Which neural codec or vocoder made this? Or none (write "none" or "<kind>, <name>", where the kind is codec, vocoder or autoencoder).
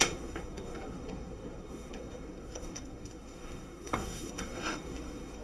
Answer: codec, SNAC